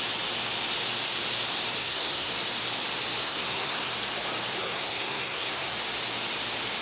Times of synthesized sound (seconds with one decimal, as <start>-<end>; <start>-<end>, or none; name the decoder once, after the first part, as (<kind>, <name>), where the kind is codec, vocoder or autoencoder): 1.8-2.3 (codec, SNAC); 3.2-3.9; 4.6-5.7